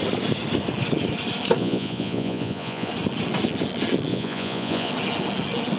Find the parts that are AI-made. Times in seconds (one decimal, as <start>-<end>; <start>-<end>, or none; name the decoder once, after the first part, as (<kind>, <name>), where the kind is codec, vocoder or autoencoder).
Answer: 1.6-2.9 (vocoder, Vocos); 4.1-4.9